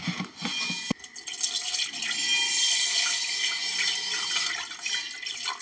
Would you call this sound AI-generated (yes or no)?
no